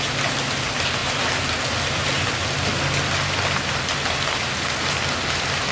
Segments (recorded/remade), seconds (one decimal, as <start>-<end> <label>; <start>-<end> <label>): 0.0-1.0 recorded; 1.0-2.3 remade; 2.3-5.7 recorded